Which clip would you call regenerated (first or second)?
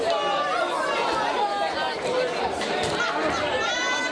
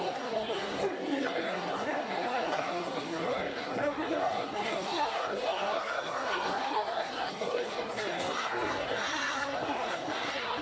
second